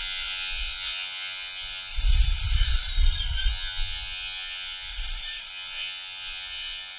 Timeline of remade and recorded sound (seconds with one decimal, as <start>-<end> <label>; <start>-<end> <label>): 0.0-1.9 remade; 1.9-3.5 recorded; 3.5-4.9 remade; 4.9-5.5 recorded; 5.5-7.0 remade